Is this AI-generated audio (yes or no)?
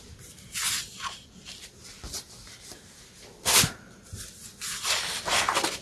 no